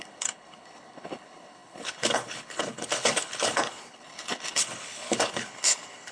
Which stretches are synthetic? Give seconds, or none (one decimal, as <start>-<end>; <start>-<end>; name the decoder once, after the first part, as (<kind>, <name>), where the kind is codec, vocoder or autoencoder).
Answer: 0.0-6.1 (codec, HILCodec)